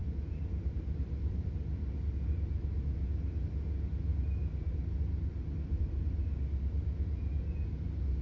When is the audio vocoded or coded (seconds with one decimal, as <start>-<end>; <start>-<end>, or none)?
none